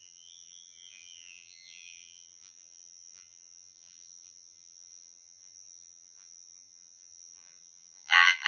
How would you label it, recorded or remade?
remade